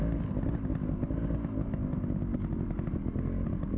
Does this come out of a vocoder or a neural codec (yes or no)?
no